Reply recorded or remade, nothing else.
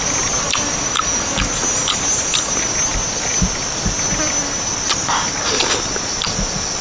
recorded